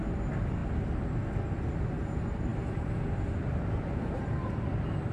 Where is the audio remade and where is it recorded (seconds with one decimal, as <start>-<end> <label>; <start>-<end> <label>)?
0.0-2.5 recorded; 2.5-4.2 remade; 4.2-5.1 recorded